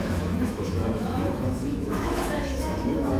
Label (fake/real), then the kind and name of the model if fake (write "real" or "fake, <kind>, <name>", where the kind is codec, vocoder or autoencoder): fake, autoencoder, DAC-VAE